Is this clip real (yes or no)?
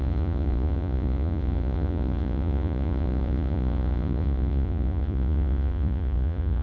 no